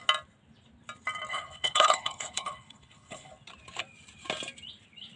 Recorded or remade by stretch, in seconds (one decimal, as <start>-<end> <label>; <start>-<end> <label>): 0.0-1.3 recorded; 1.3-3.3 remade; 3.3-5.2 recorded